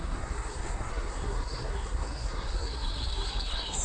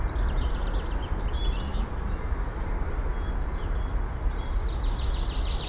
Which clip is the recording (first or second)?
second